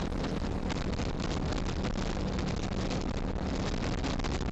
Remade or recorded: recorded